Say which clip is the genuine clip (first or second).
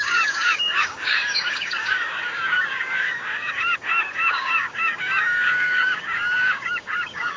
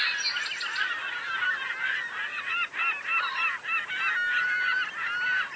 second